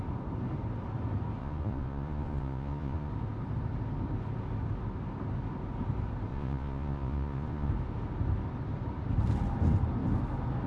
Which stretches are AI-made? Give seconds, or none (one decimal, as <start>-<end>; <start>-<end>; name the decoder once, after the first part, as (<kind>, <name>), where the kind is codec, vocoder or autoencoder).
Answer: 1.4-3.1 (vocoder, Vocos); 6.3-7.7

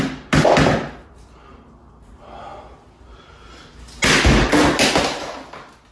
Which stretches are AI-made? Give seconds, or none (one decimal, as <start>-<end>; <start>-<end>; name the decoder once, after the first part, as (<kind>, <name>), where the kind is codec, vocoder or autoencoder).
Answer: none

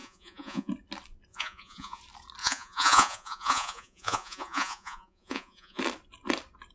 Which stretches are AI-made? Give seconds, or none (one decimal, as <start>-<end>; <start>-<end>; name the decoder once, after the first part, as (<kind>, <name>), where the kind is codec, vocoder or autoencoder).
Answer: 0.0-0.7 (vocoder, Vocos); 1.3-2.0; 2.4-5.8